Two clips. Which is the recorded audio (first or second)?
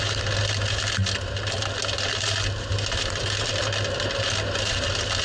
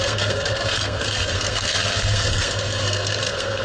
first